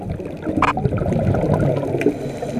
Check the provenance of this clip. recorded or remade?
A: recorded